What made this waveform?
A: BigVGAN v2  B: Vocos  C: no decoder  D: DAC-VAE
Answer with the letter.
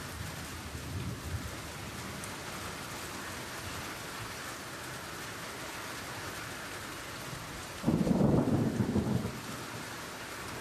C